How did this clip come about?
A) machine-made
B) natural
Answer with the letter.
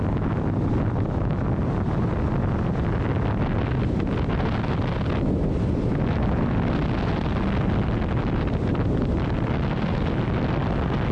B